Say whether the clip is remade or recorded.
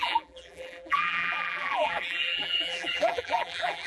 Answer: remade